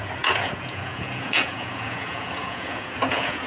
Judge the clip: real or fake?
fake